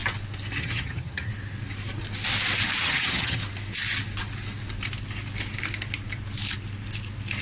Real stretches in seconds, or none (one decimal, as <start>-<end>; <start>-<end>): 0.0-0.6; 1.3-2.8; 3.4-7.4